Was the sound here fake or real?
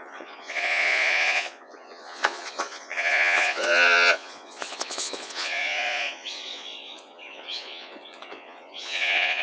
fake